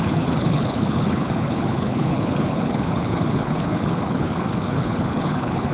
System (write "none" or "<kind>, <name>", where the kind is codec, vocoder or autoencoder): codec, HILCodec